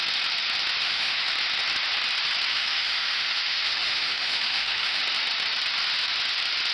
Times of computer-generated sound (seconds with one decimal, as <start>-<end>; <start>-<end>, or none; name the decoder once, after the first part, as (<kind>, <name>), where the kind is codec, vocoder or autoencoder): 0.8-1.3 (autoencoder, DAC-VAE); 2.5-5.0